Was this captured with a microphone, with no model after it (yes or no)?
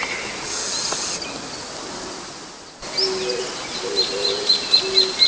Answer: yes